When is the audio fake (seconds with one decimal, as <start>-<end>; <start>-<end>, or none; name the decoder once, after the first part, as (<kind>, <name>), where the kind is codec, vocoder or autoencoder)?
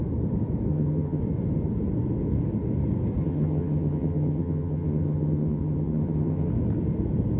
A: 0.7-1.2 (vocoder, HiFi-GAN); 3.2-6.5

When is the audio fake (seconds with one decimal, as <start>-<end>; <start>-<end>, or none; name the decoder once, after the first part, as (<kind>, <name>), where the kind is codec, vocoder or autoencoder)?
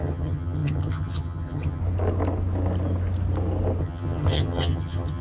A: 0.0-1.8 (vocoder, HiFi-GAN); 3.8-5.2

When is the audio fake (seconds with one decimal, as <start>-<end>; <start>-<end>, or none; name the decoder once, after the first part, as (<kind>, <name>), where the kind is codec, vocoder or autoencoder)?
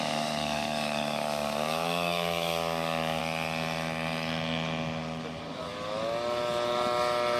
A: 0.0-3.2 (codec, DAC)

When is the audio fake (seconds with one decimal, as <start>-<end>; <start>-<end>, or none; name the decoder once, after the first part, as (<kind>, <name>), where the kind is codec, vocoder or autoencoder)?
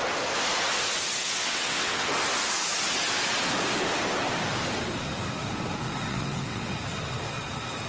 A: 1.2-2.1 (vocoder, WaveNeXt); 6.1-6.7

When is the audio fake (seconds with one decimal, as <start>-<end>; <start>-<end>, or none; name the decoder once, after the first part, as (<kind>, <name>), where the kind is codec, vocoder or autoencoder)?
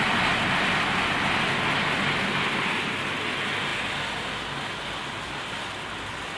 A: none